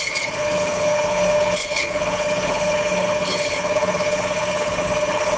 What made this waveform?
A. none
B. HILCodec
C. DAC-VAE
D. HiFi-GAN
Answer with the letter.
B